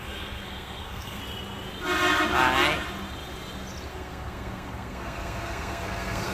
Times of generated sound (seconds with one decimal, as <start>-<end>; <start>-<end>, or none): 0.0-1.2; 3.9-6.3